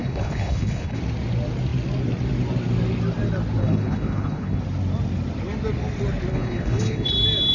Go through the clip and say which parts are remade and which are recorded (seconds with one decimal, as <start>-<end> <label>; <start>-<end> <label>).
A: 0.0-1.0 remade; 1.0-3.6 recorded; 3.6-4.6 remade; 4.6-6.3 recorded; 6.3-7.1 remade; 7.1-7.5 recorded